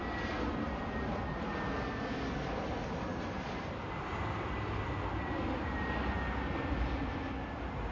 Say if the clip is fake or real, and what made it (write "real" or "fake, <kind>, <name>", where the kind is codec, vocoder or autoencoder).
real